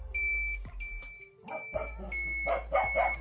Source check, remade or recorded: recorded